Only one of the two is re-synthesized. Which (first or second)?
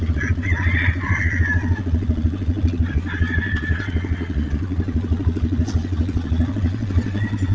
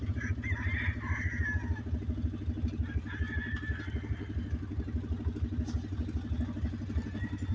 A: first